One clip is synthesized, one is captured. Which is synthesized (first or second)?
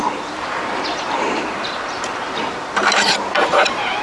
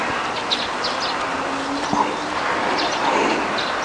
first